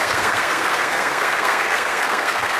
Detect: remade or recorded remade